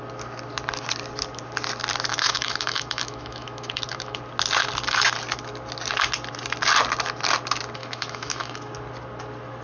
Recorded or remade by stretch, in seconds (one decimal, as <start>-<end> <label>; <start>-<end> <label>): 0.0-2.1 recorded; 2.1-4.2 remade; 4.2-7.8 recorded; 7.8-8.7 remade; 8.7-9.6 recorded